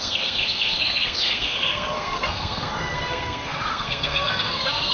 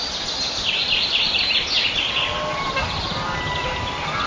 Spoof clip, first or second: first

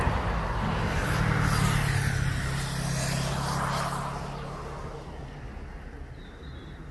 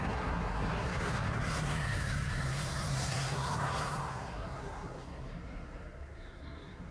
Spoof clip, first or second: second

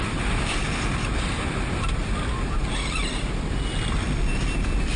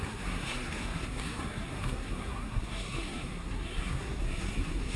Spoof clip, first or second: second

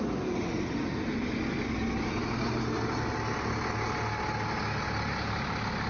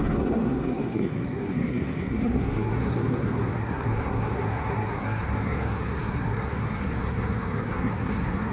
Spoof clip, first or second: second